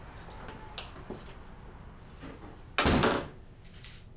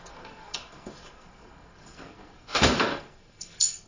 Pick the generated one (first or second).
second